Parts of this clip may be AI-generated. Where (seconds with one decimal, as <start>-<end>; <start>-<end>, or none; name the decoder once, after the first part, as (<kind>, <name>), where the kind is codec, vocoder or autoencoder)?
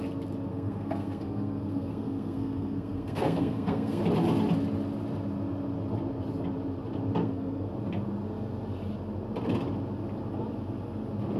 0.5-4.0 (codec, SNAC); 7.2-7.7